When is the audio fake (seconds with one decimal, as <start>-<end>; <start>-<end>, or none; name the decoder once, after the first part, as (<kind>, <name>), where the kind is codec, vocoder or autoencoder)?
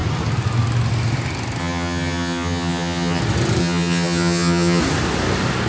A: 1.6-3.2 (vocoder, HiFi-GAN); 3.6-4.8